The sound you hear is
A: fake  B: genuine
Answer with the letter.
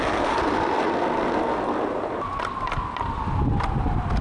B